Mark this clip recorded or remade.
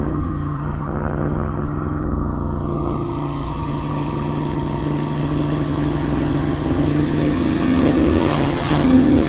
remade